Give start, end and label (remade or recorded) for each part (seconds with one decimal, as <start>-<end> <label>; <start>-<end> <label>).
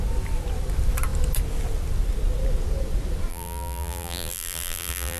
0.0-3.3 recorded; 3.3-5.2 remade